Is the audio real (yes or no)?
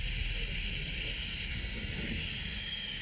yes